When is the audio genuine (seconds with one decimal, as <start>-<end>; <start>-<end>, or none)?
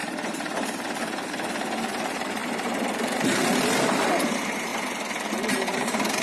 4.7-5.3